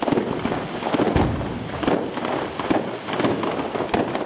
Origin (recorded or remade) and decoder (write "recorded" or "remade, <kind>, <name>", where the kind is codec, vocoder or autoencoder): recorded